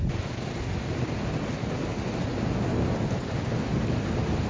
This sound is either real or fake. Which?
real